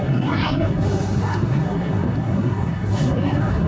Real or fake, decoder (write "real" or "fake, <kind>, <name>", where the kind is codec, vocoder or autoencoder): fake, codec, SNAC